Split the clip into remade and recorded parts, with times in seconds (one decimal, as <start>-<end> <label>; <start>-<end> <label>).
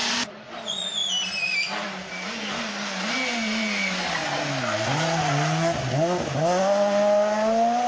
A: 0.0-7.9 recorded